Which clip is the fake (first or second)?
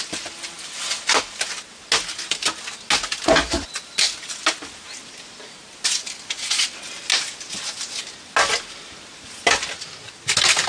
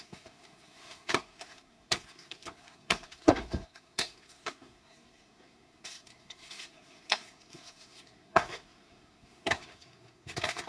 second